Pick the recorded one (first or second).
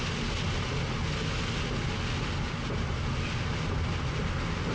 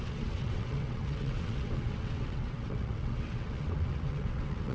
first